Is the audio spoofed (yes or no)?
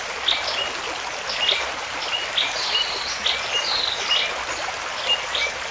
no